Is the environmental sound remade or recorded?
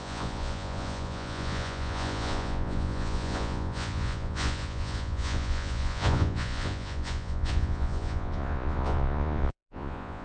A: remade